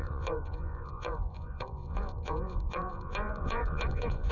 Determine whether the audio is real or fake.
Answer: fake